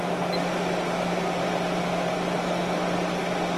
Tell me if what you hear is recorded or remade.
recorded